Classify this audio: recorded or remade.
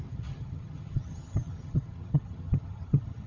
remade